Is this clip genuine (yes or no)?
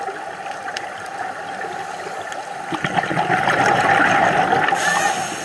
yes